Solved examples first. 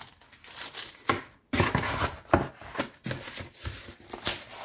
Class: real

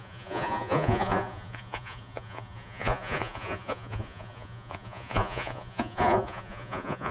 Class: fake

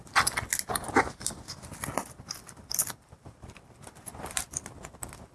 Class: real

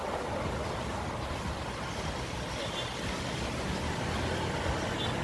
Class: real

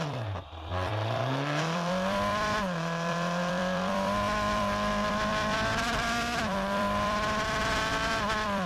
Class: fake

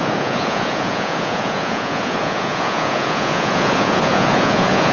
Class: fake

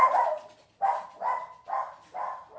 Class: real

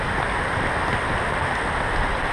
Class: real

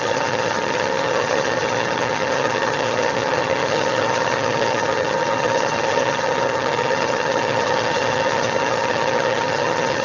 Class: fake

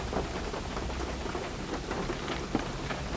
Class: real